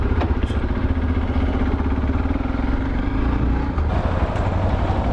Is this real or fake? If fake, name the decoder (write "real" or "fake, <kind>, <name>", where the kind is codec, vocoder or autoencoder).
real